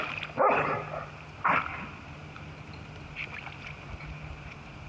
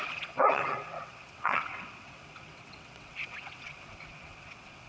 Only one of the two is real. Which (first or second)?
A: first